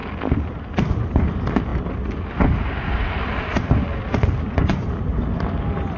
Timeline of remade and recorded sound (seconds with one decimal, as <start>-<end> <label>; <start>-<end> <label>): 0.0-6.0 recorded